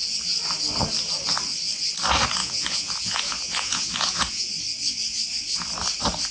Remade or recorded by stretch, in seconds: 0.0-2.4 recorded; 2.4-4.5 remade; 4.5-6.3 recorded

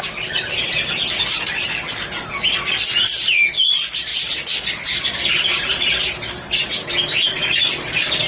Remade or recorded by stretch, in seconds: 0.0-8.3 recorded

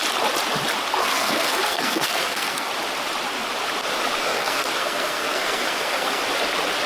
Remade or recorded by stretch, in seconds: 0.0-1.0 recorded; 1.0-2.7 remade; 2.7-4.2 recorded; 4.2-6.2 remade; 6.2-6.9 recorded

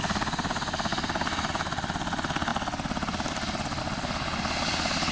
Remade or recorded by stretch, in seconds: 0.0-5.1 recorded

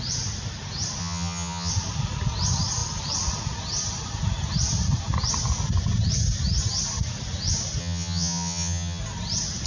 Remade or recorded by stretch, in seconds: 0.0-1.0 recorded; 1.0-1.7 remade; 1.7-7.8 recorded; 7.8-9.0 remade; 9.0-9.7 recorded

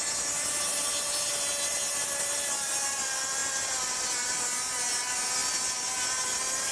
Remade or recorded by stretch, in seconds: 0.0-6.7 recorded

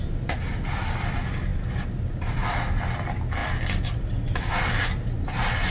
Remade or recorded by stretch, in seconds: 0.0-5.7 recorded